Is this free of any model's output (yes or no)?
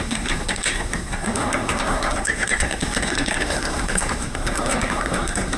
no